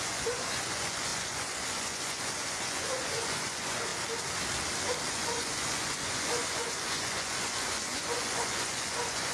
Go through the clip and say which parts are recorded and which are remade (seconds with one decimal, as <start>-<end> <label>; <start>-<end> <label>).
0.0-3.9 remade; 3.9-5.1 recorded; 5.1-9.3 remade